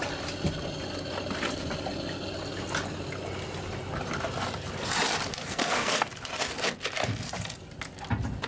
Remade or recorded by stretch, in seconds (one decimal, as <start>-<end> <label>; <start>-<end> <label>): 0.0-5.4 recorded; 5.4-6.1 remade; 6.1-8.5 recorded